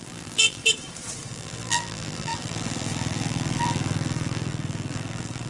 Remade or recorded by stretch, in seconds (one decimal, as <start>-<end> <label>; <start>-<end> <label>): 0.0-0.6 remade; 0.6-1.3 recorded; 1.3-5.5 remade